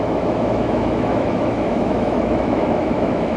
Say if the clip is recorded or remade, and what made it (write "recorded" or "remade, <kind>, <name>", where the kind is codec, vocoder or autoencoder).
remade, autoencoder, DAC-VAE